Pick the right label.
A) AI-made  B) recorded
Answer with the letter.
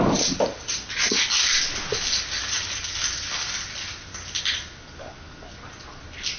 B